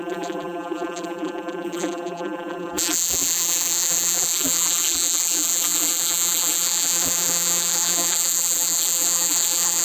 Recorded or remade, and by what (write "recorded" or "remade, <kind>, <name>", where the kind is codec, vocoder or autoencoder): remade, vocoder, BigVGAN v2